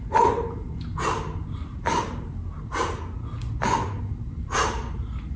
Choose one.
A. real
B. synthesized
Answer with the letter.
A